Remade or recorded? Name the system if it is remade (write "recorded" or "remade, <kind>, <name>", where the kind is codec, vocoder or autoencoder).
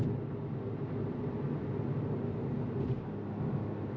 recorded